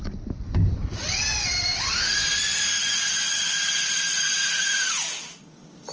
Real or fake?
real